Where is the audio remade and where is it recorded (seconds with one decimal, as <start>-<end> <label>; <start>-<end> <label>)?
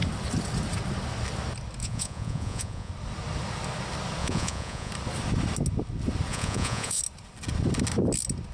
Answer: 0.0-1.8 recorded; 1.8-2.9 remade; 2.9-4.2 recorded; 4.2-4.9 remade; 4.9-6.3 recorded; 6.3-7.0 remade; 7.0-8.5 recorded